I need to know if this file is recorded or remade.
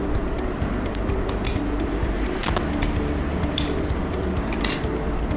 remade